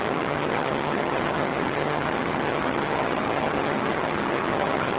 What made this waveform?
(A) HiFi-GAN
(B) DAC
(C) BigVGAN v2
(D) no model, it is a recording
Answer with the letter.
A